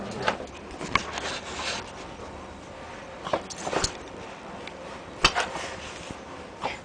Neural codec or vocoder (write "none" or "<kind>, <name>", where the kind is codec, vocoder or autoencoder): none